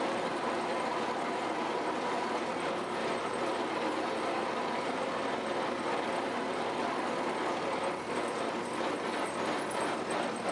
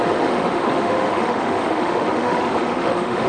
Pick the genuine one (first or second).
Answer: first